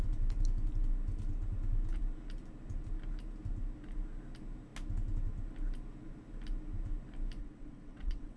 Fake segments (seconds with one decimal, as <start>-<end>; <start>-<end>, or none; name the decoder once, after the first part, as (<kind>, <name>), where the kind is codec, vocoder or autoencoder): 7.4-8.4 (vocoder, WaveNeXt)